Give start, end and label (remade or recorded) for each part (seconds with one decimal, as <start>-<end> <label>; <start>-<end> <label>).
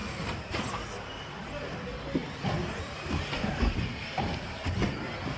0.0-0.7 remade; 0.7-2.2 recorded; 2.2-2.8 remade; 2.8-5.4 recorded